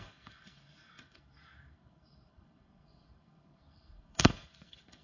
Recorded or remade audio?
remade